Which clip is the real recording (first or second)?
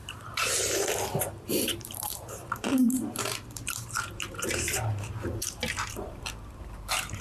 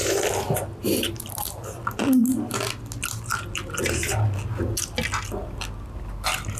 second